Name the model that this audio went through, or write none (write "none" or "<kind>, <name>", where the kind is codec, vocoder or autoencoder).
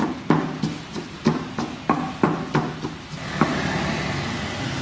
none